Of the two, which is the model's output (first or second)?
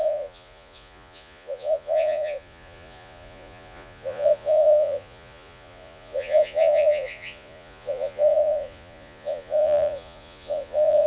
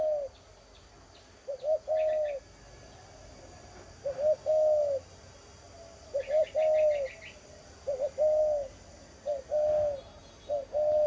first